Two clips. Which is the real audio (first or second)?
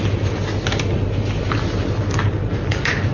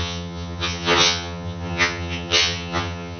first